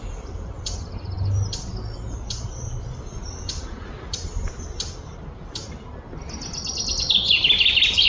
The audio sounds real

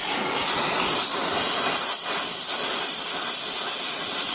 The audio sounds real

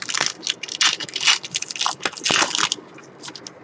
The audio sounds real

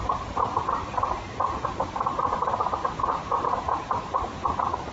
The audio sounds fake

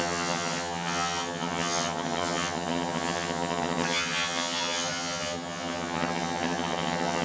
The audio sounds fake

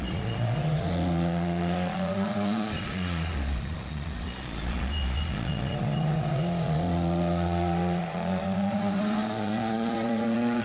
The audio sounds fake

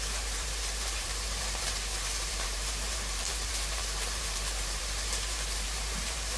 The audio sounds fake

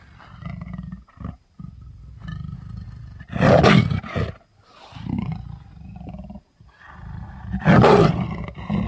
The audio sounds real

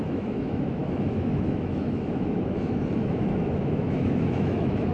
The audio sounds fake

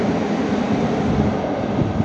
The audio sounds real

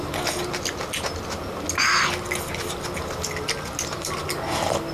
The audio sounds real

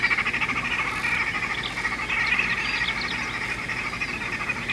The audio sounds real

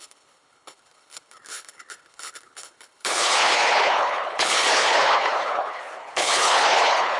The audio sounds fake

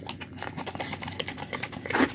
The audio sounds real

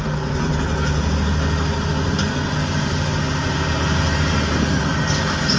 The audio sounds real